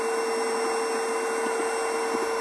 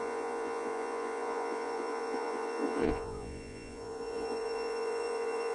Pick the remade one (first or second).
second